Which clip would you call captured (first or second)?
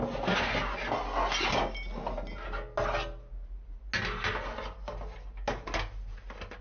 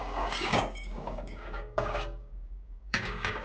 first